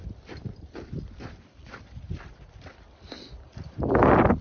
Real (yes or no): yes